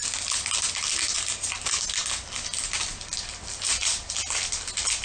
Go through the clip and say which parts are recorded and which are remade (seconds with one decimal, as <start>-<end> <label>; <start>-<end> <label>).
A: 0.0-5.0 recorded